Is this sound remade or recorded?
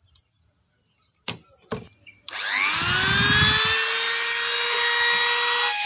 recorded